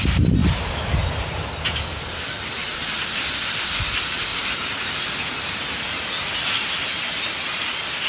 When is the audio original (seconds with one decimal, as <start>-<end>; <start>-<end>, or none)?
0.4-1.7; 4.3-6.1; 6.8-8.1